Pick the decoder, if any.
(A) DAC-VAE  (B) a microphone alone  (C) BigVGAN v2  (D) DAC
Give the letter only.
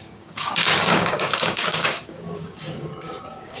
D